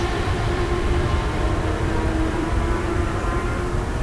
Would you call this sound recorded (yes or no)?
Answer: no